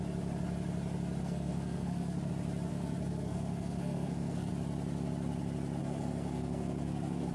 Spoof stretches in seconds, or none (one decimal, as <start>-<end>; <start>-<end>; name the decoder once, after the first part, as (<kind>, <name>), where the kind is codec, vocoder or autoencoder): 1.2-2.3 (codec, SNAC); 2.7-4.5; 5.8-7.3